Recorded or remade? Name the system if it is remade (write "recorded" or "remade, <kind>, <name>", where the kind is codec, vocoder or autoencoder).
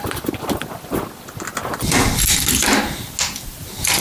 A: recorded